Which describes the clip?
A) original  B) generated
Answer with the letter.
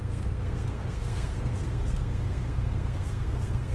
B